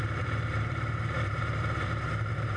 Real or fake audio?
fake